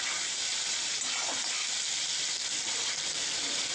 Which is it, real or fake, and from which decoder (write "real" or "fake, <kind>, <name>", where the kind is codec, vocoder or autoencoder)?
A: real